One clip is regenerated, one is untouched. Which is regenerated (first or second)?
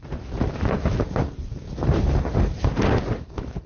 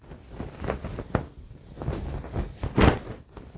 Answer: first